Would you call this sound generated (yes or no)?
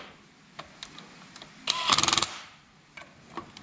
no